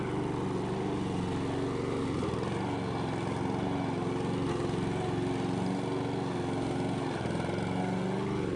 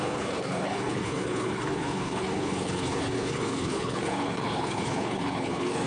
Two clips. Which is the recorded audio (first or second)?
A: first